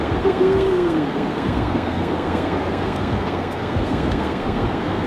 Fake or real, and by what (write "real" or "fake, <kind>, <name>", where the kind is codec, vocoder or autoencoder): fake, codec, SNAC